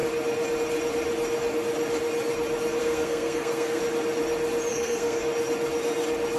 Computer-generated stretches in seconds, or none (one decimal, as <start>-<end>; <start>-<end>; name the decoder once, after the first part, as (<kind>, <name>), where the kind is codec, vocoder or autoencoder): 2.8-3.8 (codec, SNAC); 4.7-5.2